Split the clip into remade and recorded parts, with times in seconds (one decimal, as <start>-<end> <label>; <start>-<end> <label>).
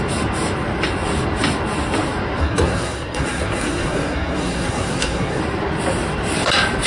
0.0-2.4 recorded; 2.4-5.4 remade; 5.4-6.9 recorded